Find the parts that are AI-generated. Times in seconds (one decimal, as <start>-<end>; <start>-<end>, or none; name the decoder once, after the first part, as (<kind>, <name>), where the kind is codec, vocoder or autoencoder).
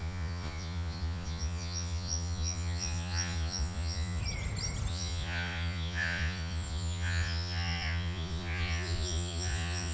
0.0-4.2 (vocoder, Vocos); 4.9-9.9